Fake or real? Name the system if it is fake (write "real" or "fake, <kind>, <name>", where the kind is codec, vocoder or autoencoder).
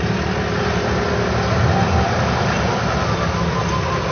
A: real